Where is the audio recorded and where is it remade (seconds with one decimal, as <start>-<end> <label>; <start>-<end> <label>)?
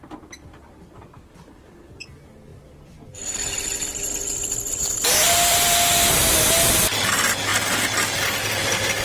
0.0-9.0 recorded